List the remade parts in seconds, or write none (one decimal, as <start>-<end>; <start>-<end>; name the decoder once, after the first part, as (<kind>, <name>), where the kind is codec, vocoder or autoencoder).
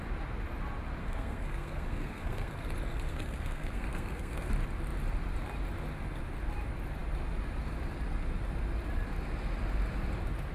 1.0-2.5 (codec, SNAC); 3.1-4.5